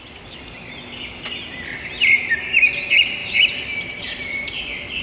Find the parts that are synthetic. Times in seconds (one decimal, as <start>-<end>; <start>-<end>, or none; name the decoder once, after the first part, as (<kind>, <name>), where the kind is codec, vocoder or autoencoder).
1.5-2.1 (vocoder, BigVGAN v2); 3.2-4.6